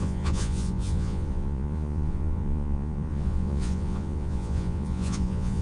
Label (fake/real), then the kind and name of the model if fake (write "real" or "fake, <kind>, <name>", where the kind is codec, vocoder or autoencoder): fake, vocoder, Vocos